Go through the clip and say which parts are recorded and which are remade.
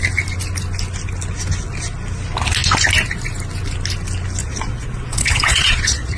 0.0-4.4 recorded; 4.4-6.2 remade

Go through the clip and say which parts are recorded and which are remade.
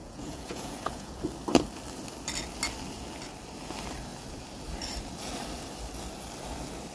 0.0-1.2 remade; 1.2-6.9 recorded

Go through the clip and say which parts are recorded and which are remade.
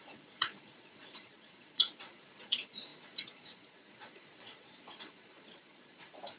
0.0-6.4 remade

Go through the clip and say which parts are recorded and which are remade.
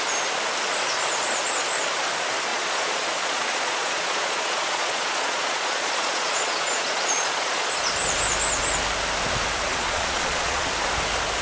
0.0-2.5 recorded; 2.5-7.7 remade; 7.7-9.7 recorded; 9.7-10.7 remade; 10.7-11.4 recorded